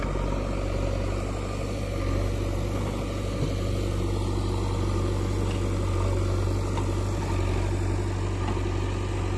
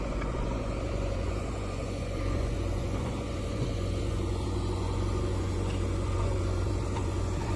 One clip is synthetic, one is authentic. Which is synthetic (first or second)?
second